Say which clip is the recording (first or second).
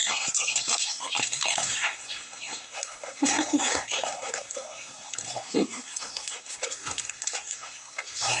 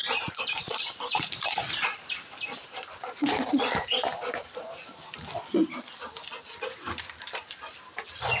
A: second